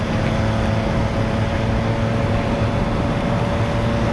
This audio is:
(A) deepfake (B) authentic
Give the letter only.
B